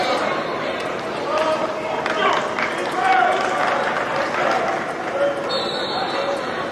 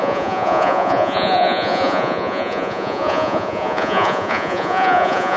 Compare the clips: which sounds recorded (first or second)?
first